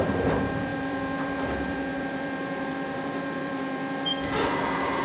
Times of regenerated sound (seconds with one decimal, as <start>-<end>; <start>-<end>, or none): 0.0-4.1

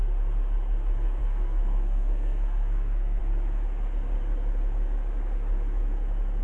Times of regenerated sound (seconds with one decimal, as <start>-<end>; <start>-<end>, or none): 1.2-3.2